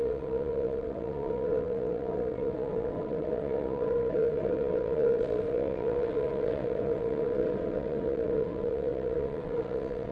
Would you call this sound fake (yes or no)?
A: yes